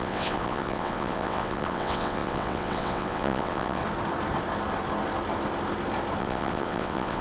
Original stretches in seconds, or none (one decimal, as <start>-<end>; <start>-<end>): 3.8-6.2